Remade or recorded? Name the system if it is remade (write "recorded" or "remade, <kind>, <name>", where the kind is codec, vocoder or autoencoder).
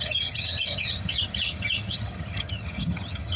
remade, vocoder, HiFi-GAN